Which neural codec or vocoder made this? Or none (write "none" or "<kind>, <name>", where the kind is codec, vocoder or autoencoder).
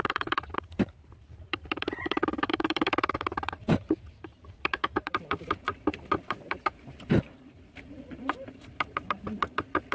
vocoder, BigVGAN v2